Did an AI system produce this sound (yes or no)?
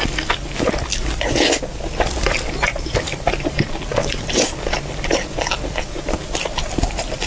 no